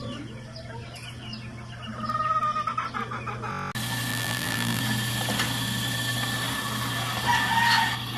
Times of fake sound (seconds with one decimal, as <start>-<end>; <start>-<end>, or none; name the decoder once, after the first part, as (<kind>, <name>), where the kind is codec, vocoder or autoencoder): 4.1-4.8 (vocoder, BigVGAN v2)

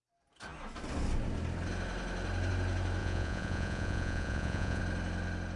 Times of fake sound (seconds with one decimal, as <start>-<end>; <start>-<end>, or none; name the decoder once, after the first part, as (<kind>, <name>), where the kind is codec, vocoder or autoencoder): 3.0-4.8 (vocoder, Vocos)